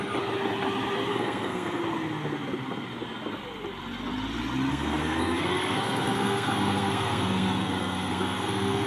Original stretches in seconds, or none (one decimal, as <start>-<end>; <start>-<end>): 0.0-1.1; 1.8-4.7